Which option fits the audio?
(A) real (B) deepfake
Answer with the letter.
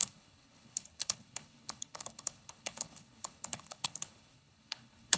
B